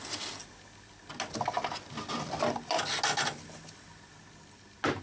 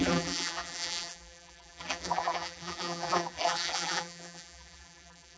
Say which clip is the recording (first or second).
first